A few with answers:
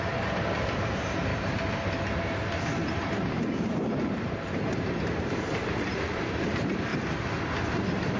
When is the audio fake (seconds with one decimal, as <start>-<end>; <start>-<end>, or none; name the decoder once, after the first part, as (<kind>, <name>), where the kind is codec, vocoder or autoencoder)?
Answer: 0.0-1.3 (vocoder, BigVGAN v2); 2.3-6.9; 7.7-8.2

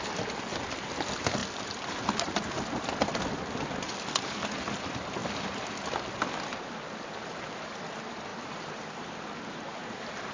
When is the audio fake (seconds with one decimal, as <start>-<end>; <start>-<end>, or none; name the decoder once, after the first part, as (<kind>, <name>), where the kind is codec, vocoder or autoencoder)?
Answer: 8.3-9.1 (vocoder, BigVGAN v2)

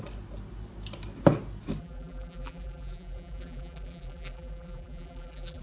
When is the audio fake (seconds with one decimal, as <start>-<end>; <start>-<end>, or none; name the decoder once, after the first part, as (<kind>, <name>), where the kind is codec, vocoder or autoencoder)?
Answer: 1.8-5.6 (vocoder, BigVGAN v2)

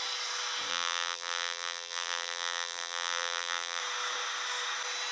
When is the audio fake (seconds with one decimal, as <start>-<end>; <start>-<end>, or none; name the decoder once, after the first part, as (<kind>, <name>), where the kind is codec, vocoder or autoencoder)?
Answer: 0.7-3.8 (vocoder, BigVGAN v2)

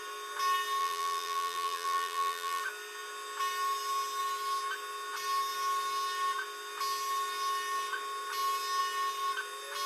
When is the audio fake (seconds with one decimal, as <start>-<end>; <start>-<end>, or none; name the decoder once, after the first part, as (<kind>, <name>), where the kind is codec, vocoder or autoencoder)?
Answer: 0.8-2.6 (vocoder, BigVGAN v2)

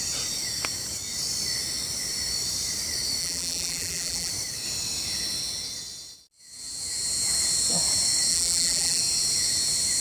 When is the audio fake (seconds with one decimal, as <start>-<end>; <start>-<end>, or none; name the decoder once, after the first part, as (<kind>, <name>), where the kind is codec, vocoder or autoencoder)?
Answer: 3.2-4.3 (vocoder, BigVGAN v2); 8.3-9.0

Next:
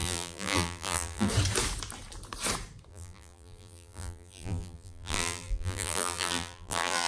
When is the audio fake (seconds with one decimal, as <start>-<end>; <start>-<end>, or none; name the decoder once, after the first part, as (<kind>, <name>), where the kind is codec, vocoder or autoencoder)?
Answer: 0.0-1.3 (vocoder, BigVGAN v2); 2.9-7.1

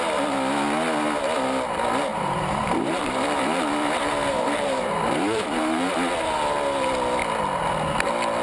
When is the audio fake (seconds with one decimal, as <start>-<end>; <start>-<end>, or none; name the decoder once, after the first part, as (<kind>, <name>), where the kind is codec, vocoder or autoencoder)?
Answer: 2.1-5.9 (vocoder, BigVGAN v2)